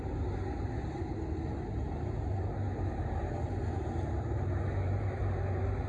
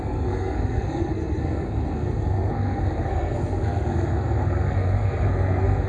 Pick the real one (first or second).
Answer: first